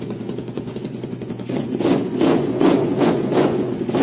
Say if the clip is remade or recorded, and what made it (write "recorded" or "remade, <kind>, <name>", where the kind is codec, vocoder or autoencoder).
remade, vocoder, Vocos